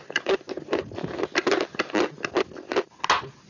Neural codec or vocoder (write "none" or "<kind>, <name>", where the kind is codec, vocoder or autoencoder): none